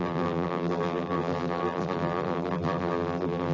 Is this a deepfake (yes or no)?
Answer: yes